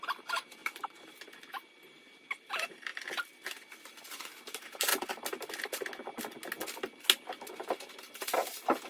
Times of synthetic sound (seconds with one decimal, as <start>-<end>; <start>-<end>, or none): 0.0-2.9; 4.1-4.9; 7.5-8.9